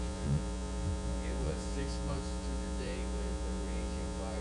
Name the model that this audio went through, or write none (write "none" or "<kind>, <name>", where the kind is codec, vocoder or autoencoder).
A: vocoder, Vocos